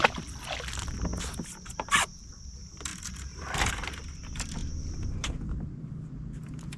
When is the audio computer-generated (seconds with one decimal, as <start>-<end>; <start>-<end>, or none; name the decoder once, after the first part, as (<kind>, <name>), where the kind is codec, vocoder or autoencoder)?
0.0-1.1 (vocoder, BigVGAN v2); 1.7-6.8